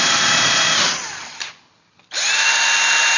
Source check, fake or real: fake